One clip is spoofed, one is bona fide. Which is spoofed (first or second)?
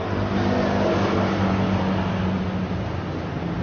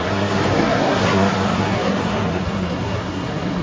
second